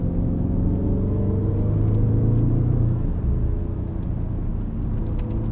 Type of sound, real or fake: real